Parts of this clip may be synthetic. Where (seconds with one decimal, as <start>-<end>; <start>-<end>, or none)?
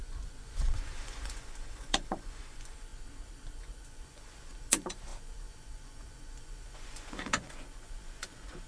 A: 0.0-2.9; 3.5-8.7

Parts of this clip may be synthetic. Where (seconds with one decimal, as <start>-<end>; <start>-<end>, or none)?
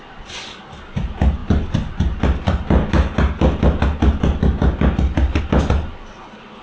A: none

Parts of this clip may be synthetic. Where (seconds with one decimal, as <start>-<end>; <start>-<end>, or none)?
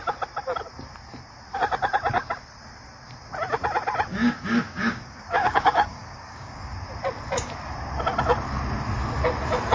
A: 4.1-6.7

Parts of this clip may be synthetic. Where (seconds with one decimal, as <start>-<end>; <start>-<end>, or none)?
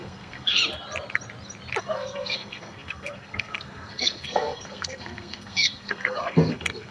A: 0.0-0.6; 1.8-6.9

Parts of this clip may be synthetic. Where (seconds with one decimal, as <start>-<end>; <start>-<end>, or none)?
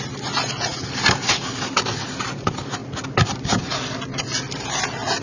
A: 0.0-2.8; 3.3-5.2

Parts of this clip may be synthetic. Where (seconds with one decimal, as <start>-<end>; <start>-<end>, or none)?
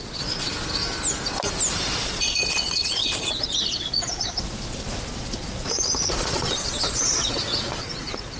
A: 0.0-0.5; 2.0-8.4